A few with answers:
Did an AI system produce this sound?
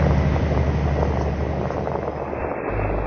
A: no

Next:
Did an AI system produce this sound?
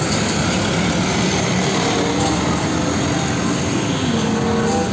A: no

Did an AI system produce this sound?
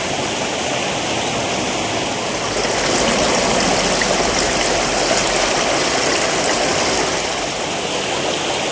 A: no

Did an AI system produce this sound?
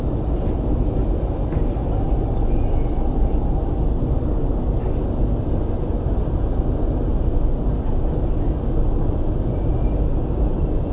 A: no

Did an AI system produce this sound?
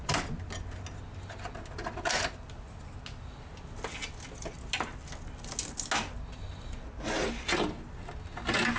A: no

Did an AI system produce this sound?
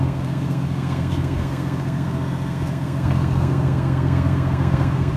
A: yes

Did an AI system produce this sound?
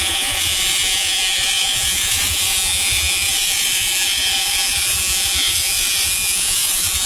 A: yes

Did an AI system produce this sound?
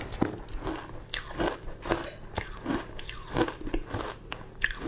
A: no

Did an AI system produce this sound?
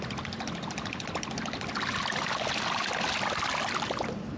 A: yes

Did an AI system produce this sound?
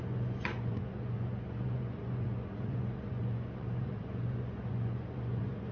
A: yes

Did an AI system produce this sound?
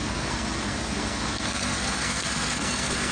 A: yes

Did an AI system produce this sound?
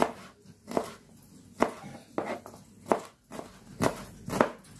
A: no